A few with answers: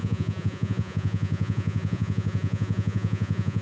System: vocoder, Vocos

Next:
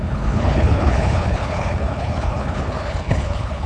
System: codec, HILCodec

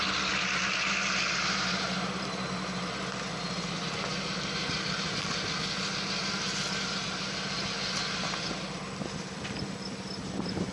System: none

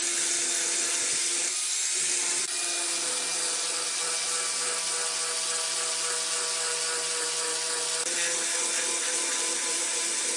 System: none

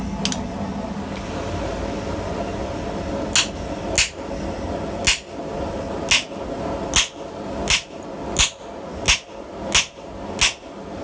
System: none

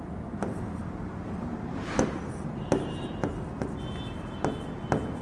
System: none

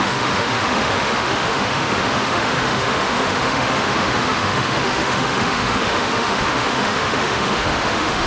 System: autoencoder, DAC-VAE